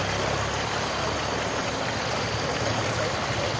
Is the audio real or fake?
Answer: real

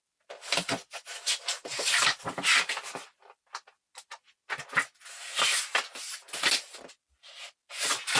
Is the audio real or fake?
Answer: real